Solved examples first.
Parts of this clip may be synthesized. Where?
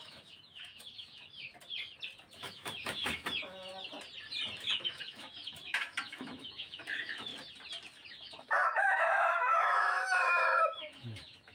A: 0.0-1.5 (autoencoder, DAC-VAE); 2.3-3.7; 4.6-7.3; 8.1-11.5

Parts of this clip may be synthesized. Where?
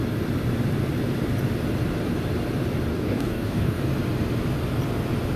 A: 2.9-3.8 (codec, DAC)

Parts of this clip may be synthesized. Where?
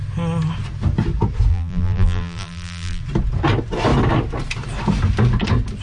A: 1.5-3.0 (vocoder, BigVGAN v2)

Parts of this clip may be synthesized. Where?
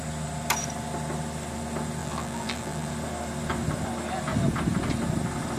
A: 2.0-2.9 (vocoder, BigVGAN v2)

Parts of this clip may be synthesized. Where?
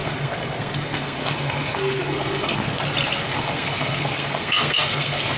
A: 0.0-2.8 (codec, SNAC); 3.2-5.4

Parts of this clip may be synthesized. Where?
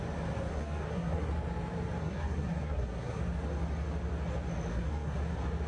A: 0.5-1.3 (codec, SNAC); 2.0-3.2; 4.7-5.2